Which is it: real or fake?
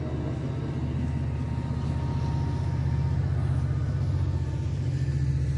real